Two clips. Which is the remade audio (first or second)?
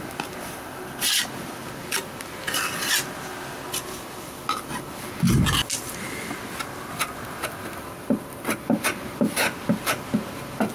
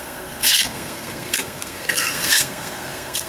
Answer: second